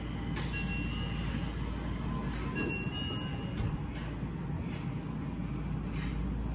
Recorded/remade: recorded